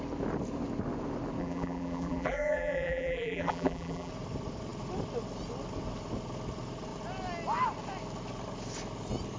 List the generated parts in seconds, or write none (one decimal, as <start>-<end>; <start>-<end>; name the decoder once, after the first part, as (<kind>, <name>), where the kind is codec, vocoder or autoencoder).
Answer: 1.4-4.1 (vocoder, BigVGAN v2)